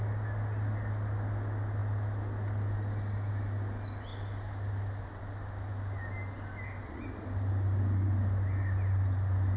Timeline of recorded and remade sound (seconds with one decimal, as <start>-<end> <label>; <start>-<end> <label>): 0.0-9.6 recorded